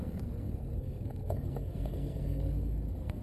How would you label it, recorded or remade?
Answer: remade